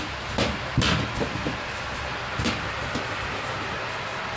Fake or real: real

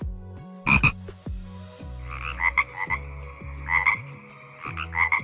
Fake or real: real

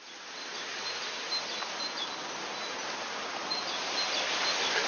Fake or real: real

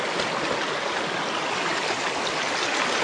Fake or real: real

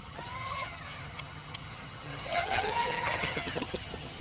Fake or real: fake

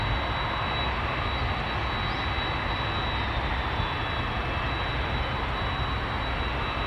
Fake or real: real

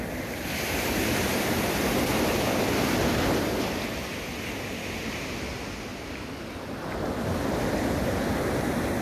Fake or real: real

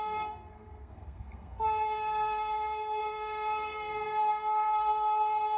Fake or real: fake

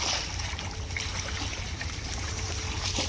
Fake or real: real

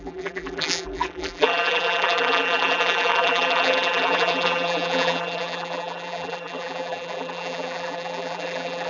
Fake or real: fake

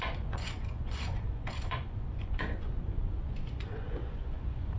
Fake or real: fake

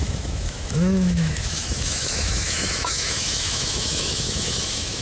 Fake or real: fake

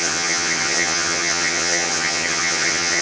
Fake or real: fake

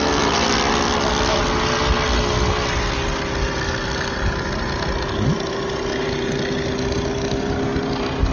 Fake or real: real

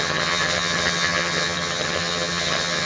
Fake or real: fake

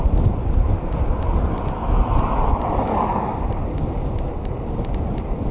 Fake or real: real